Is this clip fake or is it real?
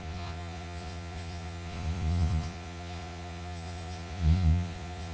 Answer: fake